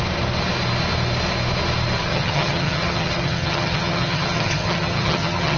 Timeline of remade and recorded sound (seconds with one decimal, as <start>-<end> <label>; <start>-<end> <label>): 0.0-2.1 recorded; 2.1-5.6 remade